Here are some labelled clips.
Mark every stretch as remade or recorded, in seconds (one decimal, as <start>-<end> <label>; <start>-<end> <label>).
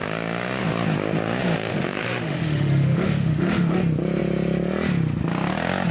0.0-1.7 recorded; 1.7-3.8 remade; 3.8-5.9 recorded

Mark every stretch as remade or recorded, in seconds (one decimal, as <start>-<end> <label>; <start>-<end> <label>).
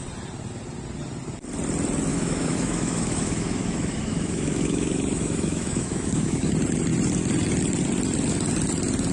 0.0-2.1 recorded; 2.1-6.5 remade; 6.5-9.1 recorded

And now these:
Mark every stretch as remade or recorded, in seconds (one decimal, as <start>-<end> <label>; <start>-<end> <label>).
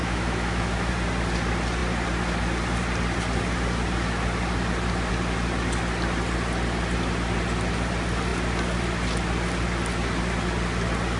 0.0-0.9 remade; 0.9-11.2 recorded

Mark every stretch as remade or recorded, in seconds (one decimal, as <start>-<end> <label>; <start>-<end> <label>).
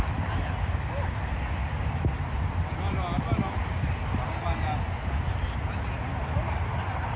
0.0-7.2 recorded